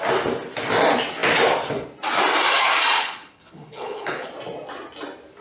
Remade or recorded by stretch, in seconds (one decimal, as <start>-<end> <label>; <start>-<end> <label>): 0.0-3.0 recorded; 3.0-4.3 remade; 4.3-5.4 recorded